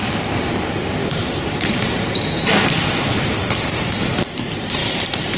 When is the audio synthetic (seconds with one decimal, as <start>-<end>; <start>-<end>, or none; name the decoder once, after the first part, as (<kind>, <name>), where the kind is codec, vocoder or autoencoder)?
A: 1.0-4.2 (vocoder, BigVGAN v2); 4.8-5.4

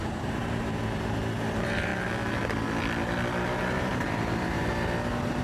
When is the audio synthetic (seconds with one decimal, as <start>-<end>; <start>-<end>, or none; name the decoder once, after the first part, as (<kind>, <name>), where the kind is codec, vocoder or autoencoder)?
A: 0.0-1.9 (vocoder, BigVGAN v2); 3.8-4.7